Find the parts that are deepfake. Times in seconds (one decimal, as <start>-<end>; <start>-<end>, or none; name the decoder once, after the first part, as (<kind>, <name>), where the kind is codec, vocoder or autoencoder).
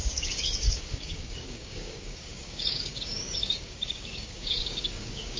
0.0-5.4 (codec, DAC)